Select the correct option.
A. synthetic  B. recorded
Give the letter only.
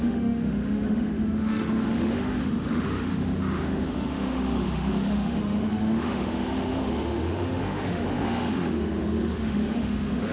A